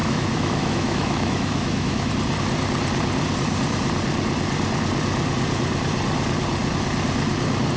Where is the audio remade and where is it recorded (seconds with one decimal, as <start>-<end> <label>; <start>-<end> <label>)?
0.0-2.1 remade; 2.1-7.8 recorded